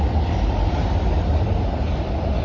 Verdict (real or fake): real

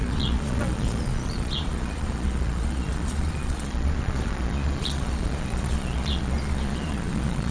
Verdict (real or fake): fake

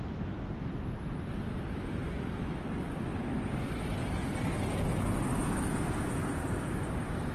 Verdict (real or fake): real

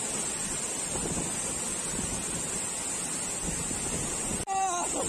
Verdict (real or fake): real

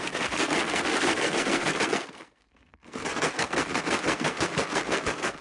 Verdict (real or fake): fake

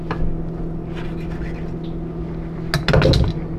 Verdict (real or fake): real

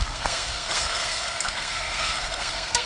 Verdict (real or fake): fake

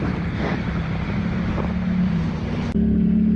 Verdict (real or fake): real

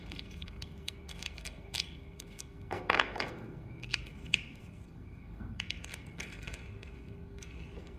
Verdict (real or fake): fake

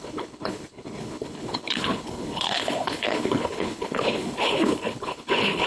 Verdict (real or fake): fake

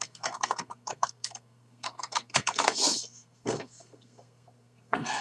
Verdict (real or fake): fake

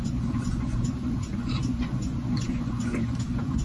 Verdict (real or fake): fake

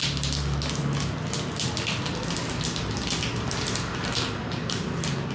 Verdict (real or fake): real